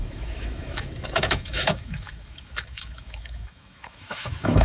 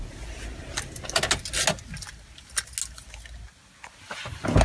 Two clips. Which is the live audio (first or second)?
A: second